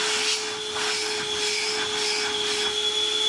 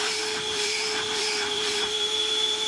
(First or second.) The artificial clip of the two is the second